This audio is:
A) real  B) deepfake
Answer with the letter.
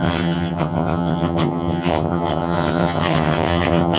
B